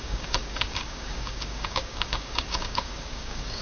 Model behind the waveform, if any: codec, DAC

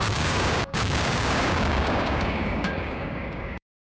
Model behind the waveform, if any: codec, DAC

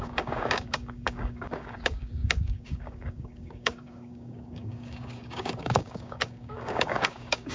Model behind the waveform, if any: codec, DAC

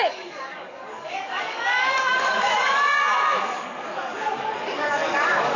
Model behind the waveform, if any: codec, DAC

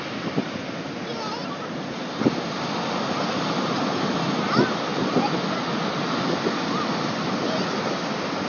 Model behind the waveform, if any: none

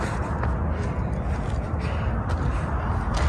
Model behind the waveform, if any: none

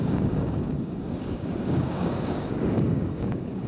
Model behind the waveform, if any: codec, DAC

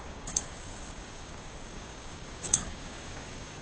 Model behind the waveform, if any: codec, DAC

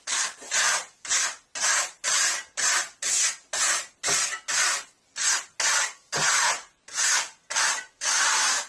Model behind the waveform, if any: none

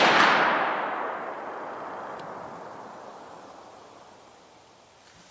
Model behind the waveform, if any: none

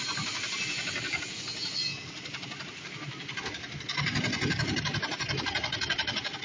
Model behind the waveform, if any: none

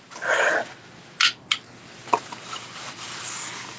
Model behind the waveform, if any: none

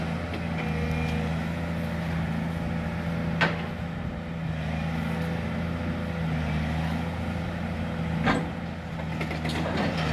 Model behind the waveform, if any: none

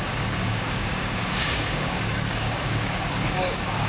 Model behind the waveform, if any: codec, DAC